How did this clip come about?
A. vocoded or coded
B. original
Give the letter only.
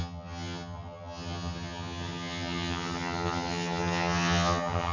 A